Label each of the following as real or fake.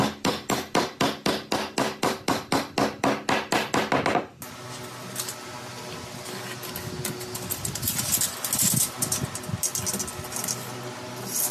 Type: real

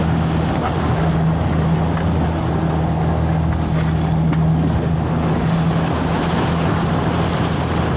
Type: real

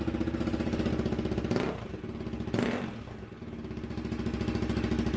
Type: real